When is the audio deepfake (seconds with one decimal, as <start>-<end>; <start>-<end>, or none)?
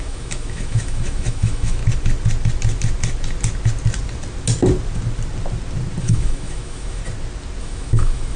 0.0-1.8; 6.0-7.0; 7.6-8.4